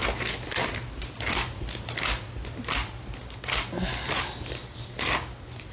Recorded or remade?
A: recorded